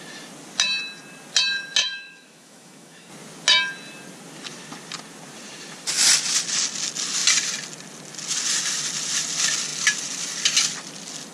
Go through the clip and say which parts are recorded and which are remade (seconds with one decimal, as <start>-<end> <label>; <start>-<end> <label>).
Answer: 0.0-1.8 recorded; 1.8-3.1 remade; 3.1-11.3 recorded